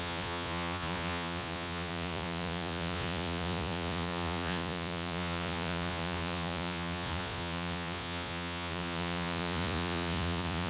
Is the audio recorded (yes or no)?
no